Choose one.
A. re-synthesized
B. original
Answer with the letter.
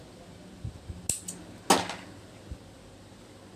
B